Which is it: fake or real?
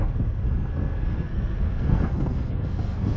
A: fake